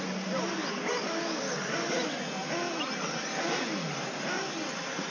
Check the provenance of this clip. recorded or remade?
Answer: recorded